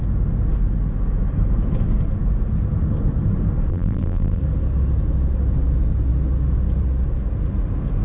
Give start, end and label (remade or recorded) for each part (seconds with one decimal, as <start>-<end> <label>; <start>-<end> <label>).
0.0-3.7 recorded; 3.7-4.4 remade; 4.4-8.0 recorded